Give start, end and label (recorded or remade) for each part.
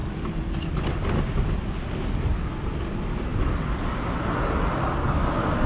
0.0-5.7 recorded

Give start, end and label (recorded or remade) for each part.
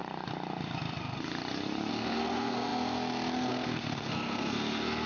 0.0-1.9 recorded; 1.9-5.1 remade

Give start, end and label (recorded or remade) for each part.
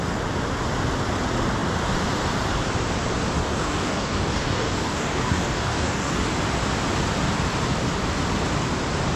0.0-3.4 recorded; 3.4-6.3 remade; 6.3-9.2 recorded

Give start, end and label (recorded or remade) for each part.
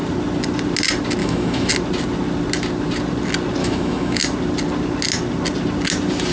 0.0-1.2 recorded; 1.2-1.7 remade; 1.7-3.6 recorded; 3.6-4.2 remade; 4.2-6.3 recorded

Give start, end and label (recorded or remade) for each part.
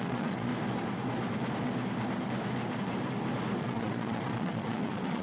0.0-0.5 remade; 0.5-3.6 recorded; 3.6-5.2 remade